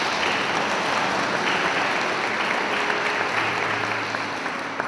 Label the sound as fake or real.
real